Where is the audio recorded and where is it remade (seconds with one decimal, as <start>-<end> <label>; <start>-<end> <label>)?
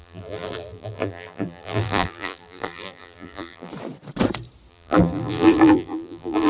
0.0-3.7 remade; 3.7-4.7 recorded; 4.7-6.5 remade